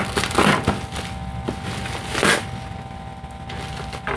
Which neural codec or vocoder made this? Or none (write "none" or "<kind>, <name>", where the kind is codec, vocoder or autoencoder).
none